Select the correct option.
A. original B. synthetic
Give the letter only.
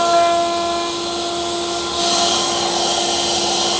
A